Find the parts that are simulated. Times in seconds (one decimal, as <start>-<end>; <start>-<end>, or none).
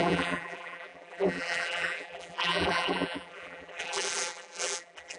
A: 0.0-5.2